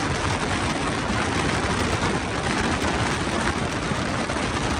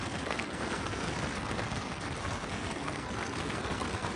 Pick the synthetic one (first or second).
second